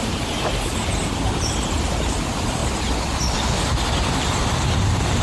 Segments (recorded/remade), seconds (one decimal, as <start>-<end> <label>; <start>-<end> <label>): 0.0-2.6 remade; 2.6-4.0 recorded; 4.0-5.2 remade